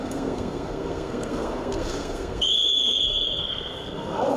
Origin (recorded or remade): remade